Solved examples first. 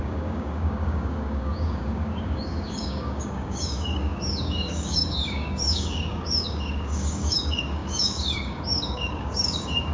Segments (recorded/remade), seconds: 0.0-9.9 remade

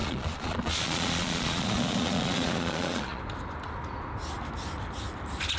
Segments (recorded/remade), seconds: 0.0-3.2 remade; 3.2-5.6 recorded

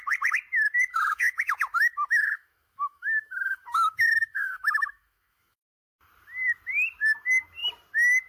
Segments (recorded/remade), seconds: 0.0-0.9 recorded; 0.9-5.9 remade; 5.9-8.3 recorded

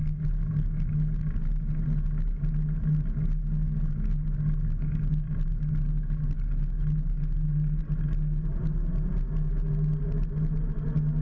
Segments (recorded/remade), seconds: 0.0-11.2 recorded

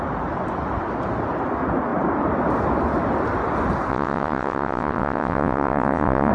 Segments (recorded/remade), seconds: 0.0-3.9 recorded; 3.9-6.3 remade

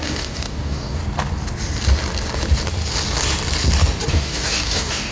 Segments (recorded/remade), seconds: 0.0-1.0 remade; 1.0-4.1 recorded; 4.1-5.1 remade

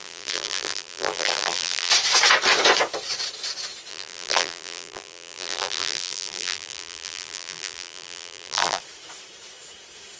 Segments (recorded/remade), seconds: 0.0-1.9 remade; 1.9-3.9 recorded; 3.9-8.8 remade; 8.8-10.2 recorded